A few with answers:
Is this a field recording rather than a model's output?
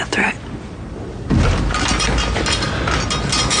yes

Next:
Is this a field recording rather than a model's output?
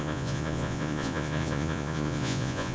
no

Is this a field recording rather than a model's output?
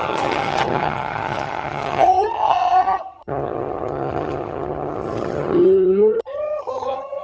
no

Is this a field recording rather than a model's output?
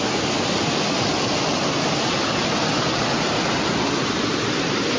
yes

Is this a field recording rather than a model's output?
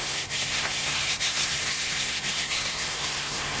no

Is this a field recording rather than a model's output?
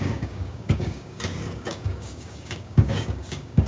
no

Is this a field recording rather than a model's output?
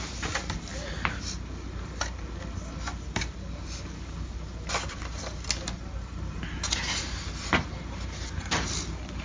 yes